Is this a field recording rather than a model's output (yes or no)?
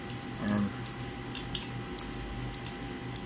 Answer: yes